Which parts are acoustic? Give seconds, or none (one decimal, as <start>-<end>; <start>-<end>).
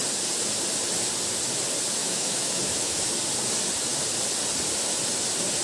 0.0-2.0; 3.1-5.6